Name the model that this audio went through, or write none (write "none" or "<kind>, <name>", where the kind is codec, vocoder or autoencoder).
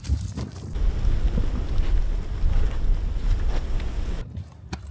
none